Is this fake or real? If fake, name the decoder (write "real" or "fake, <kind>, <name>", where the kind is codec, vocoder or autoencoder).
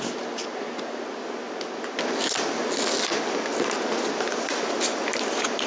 real